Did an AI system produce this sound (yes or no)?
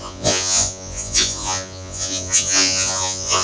yes